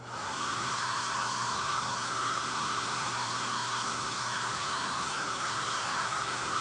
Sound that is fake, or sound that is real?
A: fake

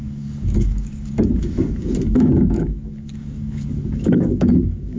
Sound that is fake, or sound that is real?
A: fake